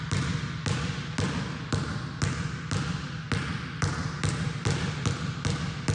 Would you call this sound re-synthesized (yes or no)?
no